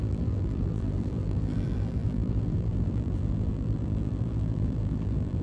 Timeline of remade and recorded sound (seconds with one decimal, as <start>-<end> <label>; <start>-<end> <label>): 0.0-5.4 remade